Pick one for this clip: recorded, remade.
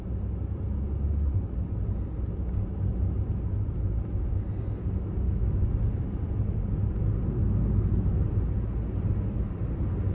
recorded